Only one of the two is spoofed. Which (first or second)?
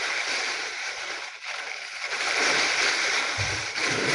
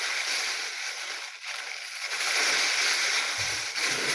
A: first